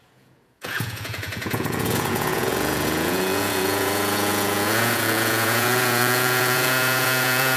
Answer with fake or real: fake